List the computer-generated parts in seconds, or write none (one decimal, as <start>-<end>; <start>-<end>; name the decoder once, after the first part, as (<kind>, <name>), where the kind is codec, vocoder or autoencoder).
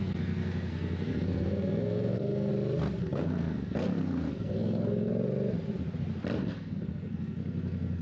0.0-2.5 (codec, SNAC); 3.0-5.1; 6.4-8.0